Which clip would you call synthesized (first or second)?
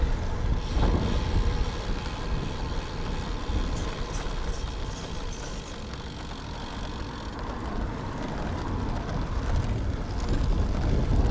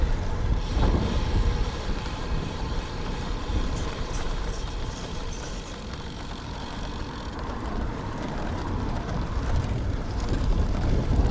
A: second